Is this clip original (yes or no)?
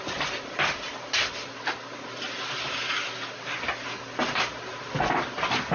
yes